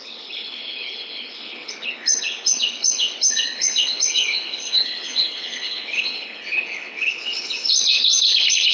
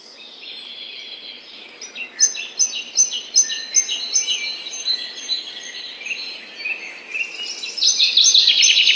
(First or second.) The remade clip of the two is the first